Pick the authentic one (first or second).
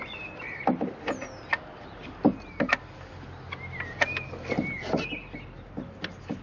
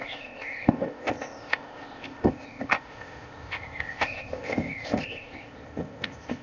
first